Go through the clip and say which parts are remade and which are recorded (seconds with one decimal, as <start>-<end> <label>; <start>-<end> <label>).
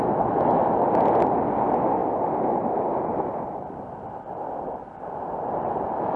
0.0-6.2 recorded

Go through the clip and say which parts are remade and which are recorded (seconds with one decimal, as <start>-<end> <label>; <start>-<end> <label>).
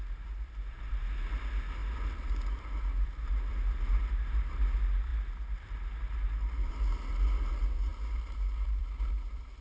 0.0-9.6 recorded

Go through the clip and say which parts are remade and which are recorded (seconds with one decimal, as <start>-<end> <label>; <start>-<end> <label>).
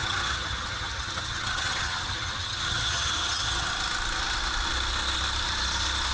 0.0-3.7 remade; 3.7-6.1 recorded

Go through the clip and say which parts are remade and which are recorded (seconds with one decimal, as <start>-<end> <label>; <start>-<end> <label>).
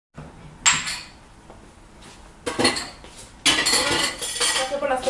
0.0-5.1 recorded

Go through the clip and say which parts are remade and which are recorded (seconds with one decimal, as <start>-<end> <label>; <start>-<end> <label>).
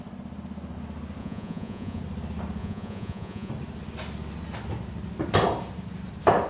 0.0-1.2 recorded; 1.2-2.0 remade; 2.0-2.6 recorded; 2.6-3.5 remade; 3.5-6.5 recorded